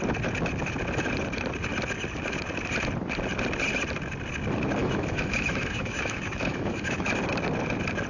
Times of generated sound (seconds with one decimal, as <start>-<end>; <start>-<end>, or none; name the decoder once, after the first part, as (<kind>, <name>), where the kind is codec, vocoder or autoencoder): 4.8-7.1 (autoencoder, DAC-VAE)